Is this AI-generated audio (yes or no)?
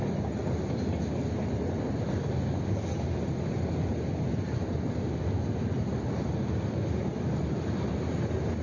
no